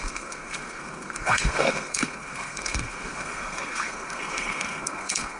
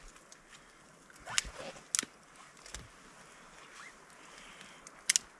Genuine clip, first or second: second